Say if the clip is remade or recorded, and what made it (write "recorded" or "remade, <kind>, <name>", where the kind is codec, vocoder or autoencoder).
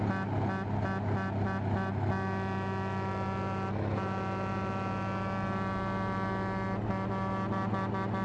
recorded